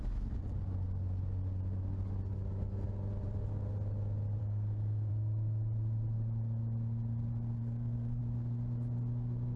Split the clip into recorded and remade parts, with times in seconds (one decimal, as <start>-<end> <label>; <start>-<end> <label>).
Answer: 0.0-4.4 recorded; 4.4-5.1 remade; 5.1-7.6 recorded; 7.6-8.2 remade; 8.2-9.6 recorded